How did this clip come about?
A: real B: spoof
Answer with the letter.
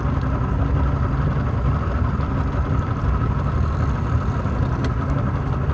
A